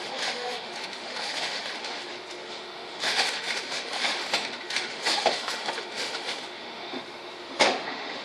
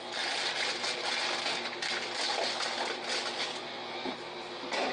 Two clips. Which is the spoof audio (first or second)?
first